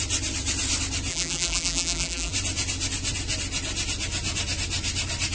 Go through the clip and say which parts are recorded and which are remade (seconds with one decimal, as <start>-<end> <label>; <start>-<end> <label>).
0.0-1.1 recorded; 1.1-2.3 remade; 2.3-5.3 recorded